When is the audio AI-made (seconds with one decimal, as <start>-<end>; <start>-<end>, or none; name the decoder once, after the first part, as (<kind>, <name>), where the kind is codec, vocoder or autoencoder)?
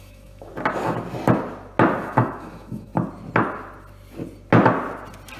0.0-0.5 (autoencoder, DAC-VAE); 2.0-2.9